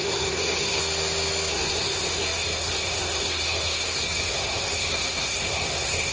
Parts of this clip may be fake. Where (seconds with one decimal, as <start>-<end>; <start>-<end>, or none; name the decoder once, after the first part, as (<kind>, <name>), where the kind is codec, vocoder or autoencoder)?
0.0-0.8 (codec, SNAC); 1.5-6.1